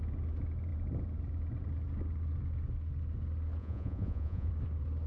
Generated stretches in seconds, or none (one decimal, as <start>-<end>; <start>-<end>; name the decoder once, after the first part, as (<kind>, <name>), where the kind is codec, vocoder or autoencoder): 3.6-4.5 (vocoder, Vocos)